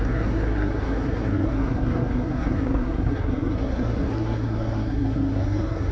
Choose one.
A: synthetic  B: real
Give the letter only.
A